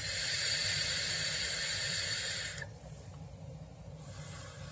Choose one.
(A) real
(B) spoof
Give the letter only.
B